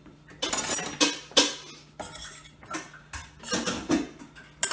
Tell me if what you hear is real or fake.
real